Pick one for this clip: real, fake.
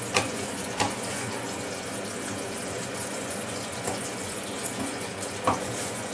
fake